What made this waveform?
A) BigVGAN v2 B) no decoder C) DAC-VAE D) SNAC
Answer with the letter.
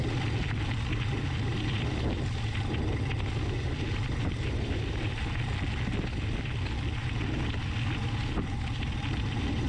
B